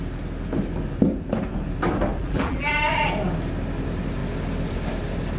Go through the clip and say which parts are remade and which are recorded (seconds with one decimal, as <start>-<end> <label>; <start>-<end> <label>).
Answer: 0.0-2.2 recorded; 2.2-2.7 remade; 2.7-5.4 recorded